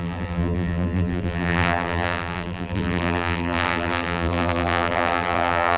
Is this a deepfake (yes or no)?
yes